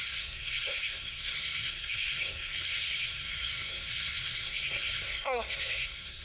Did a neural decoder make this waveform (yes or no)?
yes